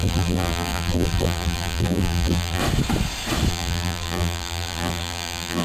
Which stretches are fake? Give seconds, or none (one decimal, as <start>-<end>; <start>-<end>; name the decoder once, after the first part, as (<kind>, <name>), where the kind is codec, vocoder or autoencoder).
0.0-2.6 (vocoder, BigVGAN v2); 3.5-5.6

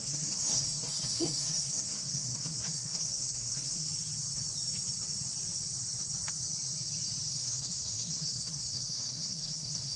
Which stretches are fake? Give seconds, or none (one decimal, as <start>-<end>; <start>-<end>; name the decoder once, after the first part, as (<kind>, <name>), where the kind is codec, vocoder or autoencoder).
0.0-3.9 (codec, SNAC); 7.3-10.0

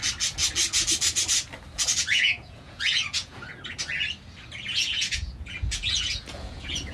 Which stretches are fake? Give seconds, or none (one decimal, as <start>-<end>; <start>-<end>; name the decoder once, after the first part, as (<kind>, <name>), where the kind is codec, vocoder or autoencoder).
2.0-3.5 (vocoder, Vocos); 4.7-6.9

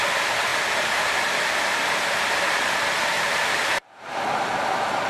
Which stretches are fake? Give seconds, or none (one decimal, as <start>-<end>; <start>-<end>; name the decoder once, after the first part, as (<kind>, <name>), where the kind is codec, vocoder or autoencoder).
0.0-0.5 (vocoder, BigVGAN v2); 2.6-5.1

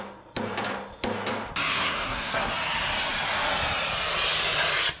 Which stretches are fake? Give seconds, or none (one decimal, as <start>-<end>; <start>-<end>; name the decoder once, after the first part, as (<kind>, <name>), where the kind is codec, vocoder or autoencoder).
1.7-2.5 (codec, SNAC)

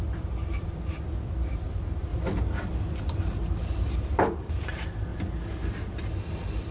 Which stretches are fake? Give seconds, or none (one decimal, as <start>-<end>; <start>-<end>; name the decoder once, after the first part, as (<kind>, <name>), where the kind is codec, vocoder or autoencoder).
0.0-5.1 (vocoder, BigVGAN v2); 5.7-6.7

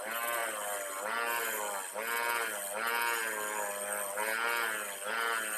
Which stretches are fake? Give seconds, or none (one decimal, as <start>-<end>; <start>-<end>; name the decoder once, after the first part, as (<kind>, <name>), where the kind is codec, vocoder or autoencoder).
0.4-1.5 (vocoder, BigVGAN v2)

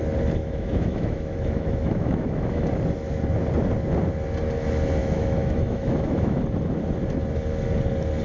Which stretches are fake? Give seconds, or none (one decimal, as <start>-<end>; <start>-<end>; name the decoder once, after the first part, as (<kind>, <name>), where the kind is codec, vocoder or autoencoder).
0.4-2.7 (autoencoder, DAC-VAE); 5.0-6.4